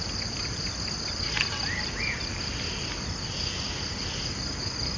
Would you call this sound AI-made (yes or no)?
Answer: no